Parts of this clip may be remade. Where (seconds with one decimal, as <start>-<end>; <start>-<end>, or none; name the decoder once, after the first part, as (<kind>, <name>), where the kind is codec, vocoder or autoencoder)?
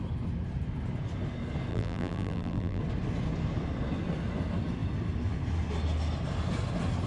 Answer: 1.7-2.8 (vocoder, BigVGAN v2)